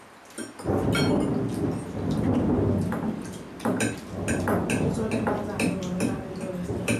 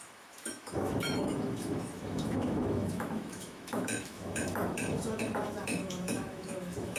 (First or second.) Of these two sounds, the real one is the first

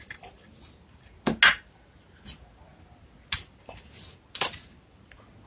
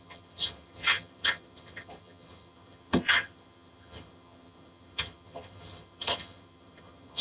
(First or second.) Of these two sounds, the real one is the first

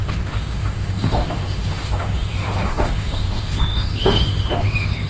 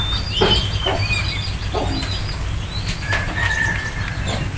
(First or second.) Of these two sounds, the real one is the second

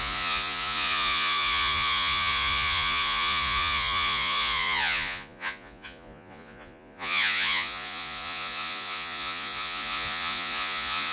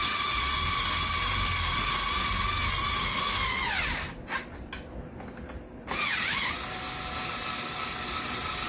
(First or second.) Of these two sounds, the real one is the second